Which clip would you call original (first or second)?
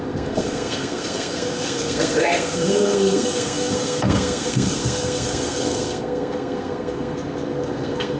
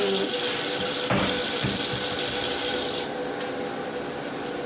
second